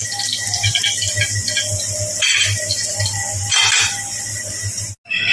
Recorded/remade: recorded